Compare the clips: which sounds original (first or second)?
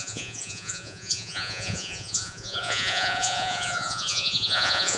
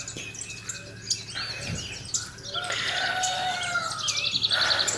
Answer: second